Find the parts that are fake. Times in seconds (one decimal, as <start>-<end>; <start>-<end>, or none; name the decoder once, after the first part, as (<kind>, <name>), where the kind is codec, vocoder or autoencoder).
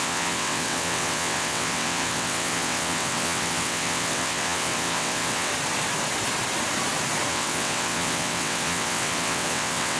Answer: 0.0-5.5 (vocoder, WaveNeXt); 7.3-10.0